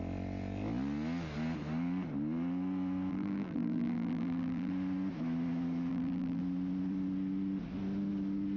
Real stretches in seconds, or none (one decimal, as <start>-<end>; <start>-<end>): 0.0-3.1; 4.7-5.9; 6.4-8.6